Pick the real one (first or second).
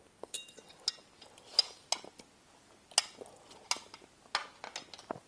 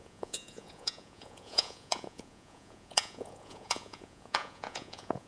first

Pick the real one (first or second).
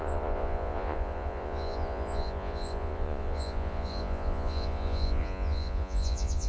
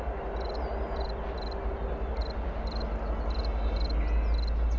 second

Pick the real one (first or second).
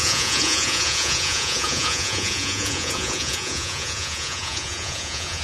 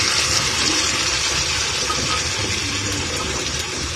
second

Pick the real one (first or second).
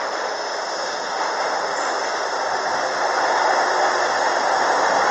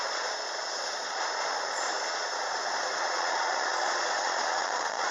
first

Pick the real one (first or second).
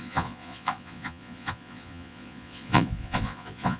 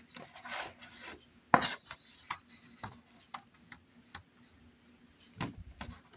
second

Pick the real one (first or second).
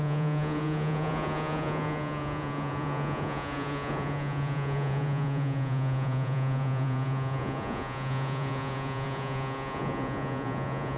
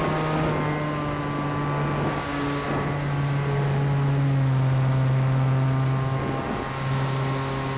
second